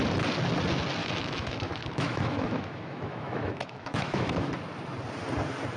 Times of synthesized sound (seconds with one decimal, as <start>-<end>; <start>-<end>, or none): 1.0-4.5

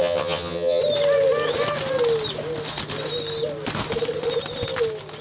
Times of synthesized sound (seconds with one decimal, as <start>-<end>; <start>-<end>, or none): 0.0-0.8

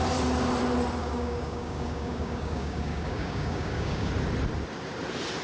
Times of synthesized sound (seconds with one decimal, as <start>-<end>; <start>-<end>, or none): 1.0-4.1

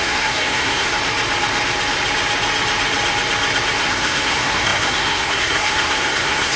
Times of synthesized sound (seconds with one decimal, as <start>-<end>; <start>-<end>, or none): 0.0-0.9; 3.8-6.6

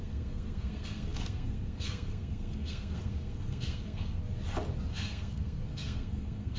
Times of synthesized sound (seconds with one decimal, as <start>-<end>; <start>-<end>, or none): 0.0-4.2; 4.9-6.6

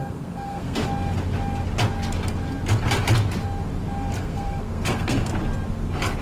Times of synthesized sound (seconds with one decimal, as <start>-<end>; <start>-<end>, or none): 0.0-0.8; 4.2-5.3

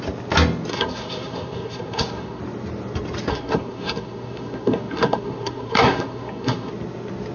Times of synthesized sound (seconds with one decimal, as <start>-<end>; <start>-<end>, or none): 0.7-2.4; 3.3-6.7

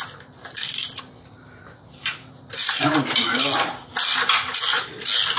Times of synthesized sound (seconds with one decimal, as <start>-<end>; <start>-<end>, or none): 0.4-1.0; 2.6-3.3